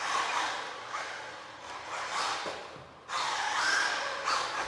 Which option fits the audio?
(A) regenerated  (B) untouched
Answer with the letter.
B